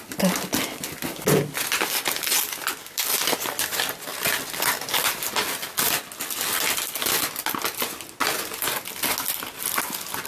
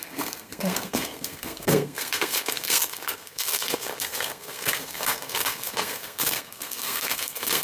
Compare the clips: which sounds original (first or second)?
first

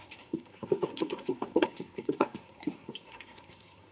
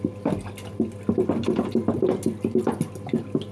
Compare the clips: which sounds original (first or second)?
second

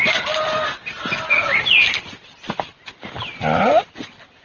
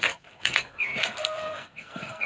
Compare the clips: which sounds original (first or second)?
first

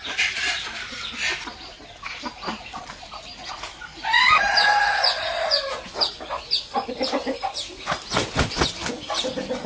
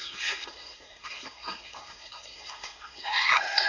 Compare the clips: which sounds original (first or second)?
first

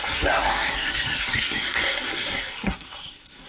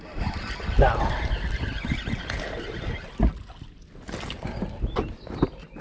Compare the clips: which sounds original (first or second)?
second